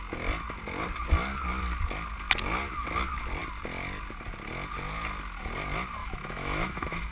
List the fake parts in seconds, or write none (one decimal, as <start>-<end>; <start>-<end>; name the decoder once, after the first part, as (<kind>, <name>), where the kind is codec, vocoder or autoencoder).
6.0-7.1 (autoencoder, DAC-VAE)